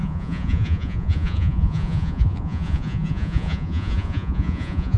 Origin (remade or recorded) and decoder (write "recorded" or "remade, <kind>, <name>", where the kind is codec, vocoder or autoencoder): remade, vocoder, Vocos